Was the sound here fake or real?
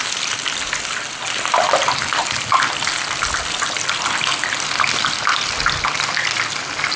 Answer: real